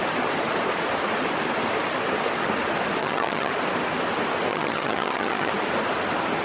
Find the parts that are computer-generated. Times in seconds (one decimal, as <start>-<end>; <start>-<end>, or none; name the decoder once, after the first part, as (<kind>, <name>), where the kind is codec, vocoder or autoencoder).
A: 3.0-3.5 (vocoder, HiFi-GAN); 4.5-5.5